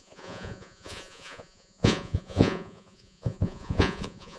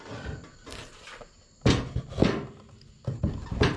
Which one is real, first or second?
second